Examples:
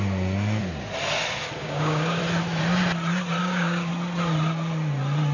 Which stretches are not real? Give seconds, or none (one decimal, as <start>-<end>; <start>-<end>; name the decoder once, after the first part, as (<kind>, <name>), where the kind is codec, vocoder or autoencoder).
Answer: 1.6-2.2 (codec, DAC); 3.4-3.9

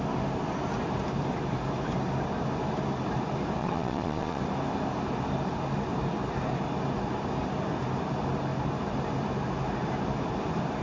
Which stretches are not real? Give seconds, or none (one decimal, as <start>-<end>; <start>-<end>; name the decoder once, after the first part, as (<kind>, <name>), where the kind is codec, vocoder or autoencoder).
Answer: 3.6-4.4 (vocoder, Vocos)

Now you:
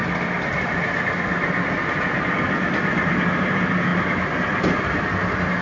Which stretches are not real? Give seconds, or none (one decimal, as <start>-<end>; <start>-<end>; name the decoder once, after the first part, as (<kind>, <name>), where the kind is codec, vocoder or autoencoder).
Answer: none

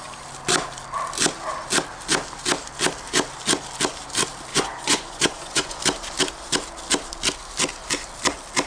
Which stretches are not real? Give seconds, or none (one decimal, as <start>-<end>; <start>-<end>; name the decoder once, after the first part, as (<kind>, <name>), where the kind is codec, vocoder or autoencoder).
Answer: 4.5-5.8 (vocoder, Vocos)

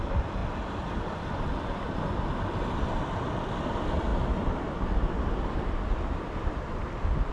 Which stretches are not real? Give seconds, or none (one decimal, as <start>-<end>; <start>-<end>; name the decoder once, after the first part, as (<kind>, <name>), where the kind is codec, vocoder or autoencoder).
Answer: none

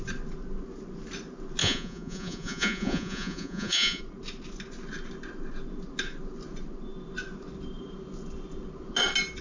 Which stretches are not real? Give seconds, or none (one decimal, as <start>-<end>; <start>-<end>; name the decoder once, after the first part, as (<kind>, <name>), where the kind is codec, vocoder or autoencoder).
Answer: 1.6-4.0 (vocoder, Vocos)